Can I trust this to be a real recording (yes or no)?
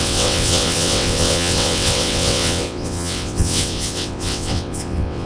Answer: no